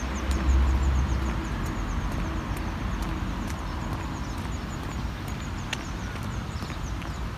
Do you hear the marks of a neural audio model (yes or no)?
no